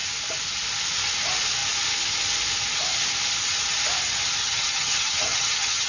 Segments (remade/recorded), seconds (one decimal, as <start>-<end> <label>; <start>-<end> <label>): 0.0-4.4 recorded; 4.4-5.9 remade